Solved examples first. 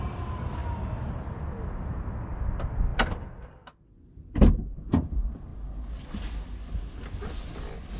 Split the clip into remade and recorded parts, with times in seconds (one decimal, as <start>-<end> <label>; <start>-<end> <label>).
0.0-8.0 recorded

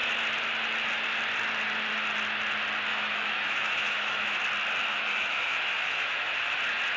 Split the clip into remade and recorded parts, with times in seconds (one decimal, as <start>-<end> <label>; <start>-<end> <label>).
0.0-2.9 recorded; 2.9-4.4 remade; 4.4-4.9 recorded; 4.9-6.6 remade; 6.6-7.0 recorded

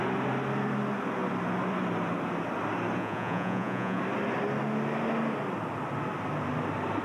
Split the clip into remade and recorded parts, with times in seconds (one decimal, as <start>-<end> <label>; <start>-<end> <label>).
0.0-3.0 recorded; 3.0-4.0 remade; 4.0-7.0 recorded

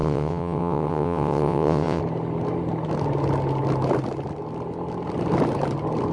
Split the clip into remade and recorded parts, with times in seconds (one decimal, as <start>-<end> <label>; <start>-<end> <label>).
0.0-2.0 remade; 2.0-6.1 recorded

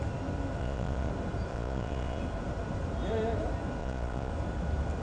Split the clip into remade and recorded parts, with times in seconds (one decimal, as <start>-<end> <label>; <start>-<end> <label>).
0.0-0.6 recorded; 0.6-1.1 remade; 1.1-1.5 recorded; 1.5-2.2 remade; 2.2-3.8 recorded; 3.8-4.3 remade; 4.3-5.0 recorded